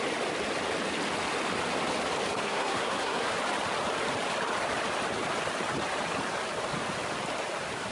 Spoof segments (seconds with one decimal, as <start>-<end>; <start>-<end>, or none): 2.4-3.3